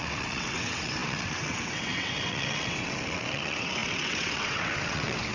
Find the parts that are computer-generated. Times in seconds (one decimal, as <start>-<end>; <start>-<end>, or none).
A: 0.0-5.3